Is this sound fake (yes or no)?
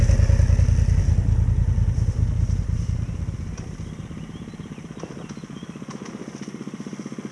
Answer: no